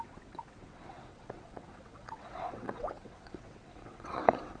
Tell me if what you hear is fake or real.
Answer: fake